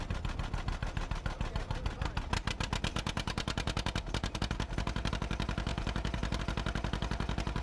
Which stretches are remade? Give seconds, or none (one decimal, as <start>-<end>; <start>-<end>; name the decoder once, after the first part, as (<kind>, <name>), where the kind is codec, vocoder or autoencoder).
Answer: 2.9-5.1 (vocoder, BigVGAN v2); 5.7-6.4